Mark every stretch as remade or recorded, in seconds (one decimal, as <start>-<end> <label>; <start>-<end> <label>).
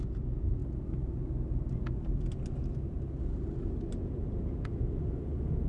0.0-0.6 remade; 0.6-4.0 recorded; 4.0-5.7 remade